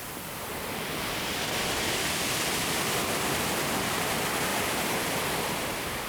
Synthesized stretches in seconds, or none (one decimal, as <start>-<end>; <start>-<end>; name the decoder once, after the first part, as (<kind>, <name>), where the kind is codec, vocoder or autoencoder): 0.0-3.7 (vocoder, BigVGAN v2); 4.5-5.6